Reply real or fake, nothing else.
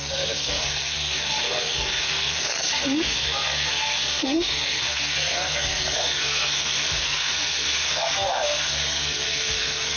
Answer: fake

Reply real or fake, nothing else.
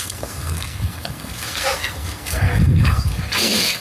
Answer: fake